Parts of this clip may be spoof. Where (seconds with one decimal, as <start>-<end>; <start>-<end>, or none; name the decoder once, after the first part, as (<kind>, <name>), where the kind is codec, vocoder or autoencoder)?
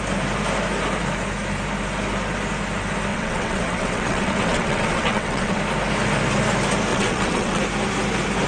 3.1-5.6 (vocoder, WaveNeXt); 6.9-7.6